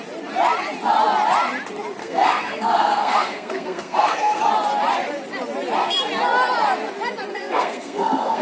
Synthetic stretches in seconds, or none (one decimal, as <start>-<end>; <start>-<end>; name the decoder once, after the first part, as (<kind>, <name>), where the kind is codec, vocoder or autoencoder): 2.0-4.4 (codec, SNAC); 7.3-8.4